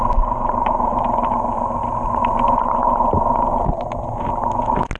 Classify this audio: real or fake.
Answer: real